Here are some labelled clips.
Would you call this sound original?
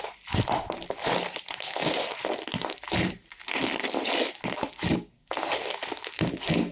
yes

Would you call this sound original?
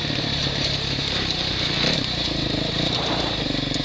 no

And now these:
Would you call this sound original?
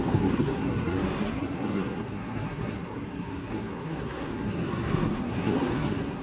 no